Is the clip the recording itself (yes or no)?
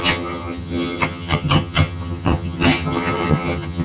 no